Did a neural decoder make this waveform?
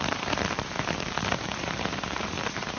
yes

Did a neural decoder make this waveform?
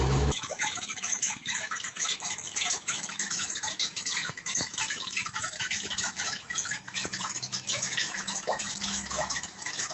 yes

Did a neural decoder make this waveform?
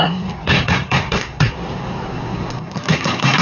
yes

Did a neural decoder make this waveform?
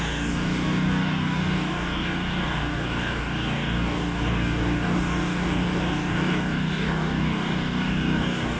yes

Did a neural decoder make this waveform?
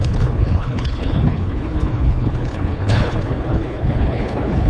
yes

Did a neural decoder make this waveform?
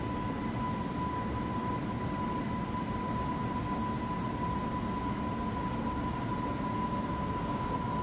no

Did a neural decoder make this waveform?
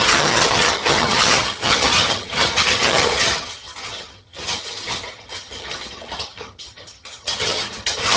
yes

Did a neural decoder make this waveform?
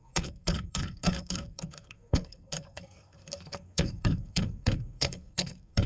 yes